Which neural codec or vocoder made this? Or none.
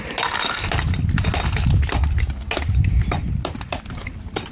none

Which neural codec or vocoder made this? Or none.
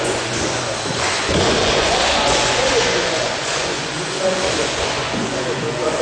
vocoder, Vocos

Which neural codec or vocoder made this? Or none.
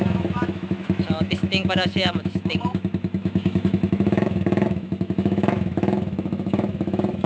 autoencoder, DAC-VAE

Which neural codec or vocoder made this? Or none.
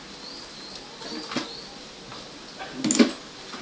none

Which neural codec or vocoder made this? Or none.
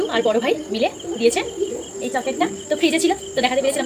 none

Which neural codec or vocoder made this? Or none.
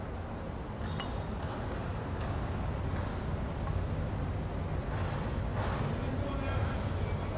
none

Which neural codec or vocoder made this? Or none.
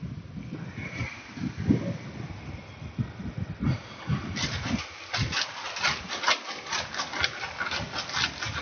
none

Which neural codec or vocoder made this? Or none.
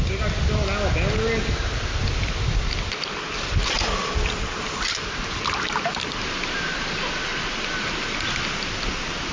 none